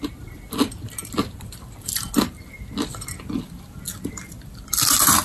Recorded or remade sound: remade